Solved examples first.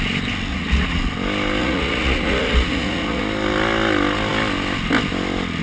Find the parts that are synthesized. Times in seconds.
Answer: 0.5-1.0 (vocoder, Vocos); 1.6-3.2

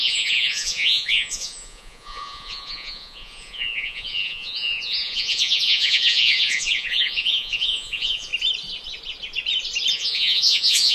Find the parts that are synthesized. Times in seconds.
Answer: 0.0-8.3 (vocoder, Vocos); 9.9-10.9

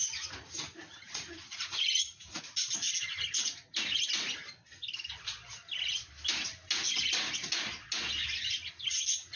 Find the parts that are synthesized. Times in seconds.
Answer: 0.0-2.4 (vocoder, Vocos)

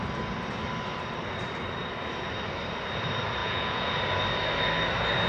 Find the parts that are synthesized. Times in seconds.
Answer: 3.4-4.0 (vocoder, Vocos)

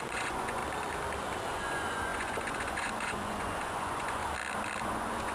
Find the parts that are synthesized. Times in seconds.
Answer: 0.0-0.6 (vocoder, Vocos); 1.5-4.2; 4.8-5.3